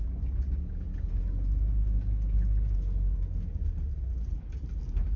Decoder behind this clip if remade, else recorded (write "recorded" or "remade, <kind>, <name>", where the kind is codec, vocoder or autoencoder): recorded